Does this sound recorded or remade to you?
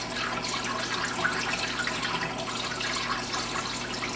recorded